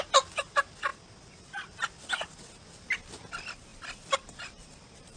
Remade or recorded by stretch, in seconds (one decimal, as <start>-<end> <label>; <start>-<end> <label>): 0.0-5.2 recorded